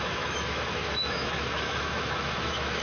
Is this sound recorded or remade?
remade